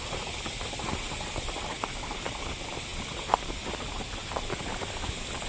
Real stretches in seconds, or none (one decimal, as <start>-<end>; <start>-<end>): 0.0-5.5